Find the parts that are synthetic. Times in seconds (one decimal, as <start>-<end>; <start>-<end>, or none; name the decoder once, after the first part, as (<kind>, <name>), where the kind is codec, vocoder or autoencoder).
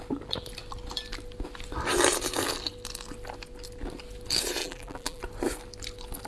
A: 4.6-5.2 (vocoder, BigVGAN v2)